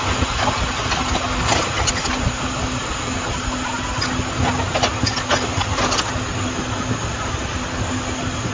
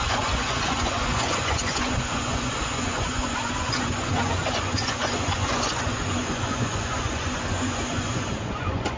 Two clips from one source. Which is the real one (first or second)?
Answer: first